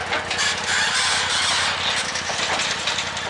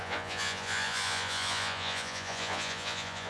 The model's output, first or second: second